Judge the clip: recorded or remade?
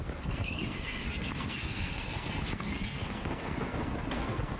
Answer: remade